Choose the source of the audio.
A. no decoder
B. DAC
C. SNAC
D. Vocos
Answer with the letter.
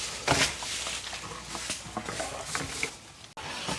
A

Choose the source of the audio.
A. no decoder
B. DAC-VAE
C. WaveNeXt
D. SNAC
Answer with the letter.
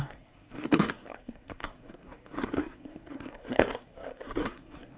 D